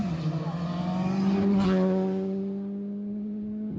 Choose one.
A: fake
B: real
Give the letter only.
B